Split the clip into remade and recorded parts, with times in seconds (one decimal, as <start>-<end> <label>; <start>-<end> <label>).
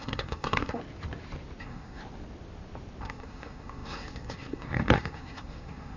0.0-0.8 remade; 0.8-1.6 recorded; 1.6-2.0 remade; 2.0-3.0 recorded; 3.0-6.0 remade